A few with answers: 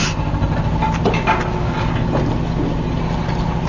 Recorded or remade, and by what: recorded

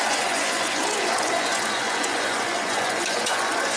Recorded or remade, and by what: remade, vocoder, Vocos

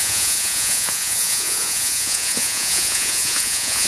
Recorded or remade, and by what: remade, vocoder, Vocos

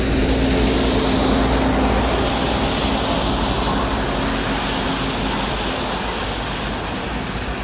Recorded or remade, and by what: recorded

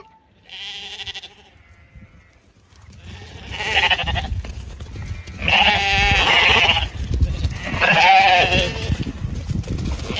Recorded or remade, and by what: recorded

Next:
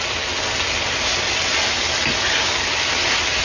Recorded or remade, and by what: recorded